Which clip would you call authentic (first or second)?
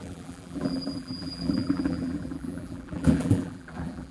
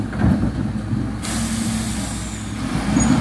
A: second